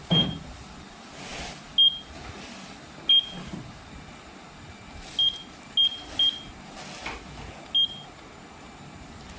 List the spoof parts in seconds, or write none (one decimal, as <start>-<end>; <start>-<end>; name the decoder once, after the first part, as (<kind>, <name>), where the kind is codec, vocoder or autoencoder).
none

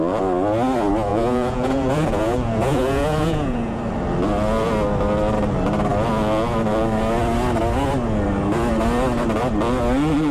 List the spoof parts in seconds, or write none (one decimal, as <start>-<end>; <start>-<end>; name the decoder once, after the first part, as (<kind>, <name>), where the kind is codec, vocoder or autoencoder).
1.1-3.8 (vocoder, Vocos)

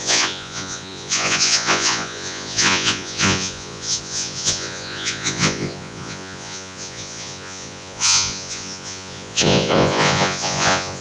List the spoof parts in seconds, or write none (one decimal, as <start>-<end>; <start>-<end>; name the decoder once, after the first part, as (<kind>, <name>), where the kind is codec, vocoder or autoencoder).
0.0-11.0 (vocoder, Vocos)

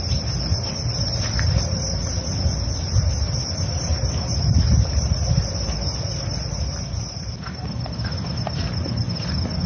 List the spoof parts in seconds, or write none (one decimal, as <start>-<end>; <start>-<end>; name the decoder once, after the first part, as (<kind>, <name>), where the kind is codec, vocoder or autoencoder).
none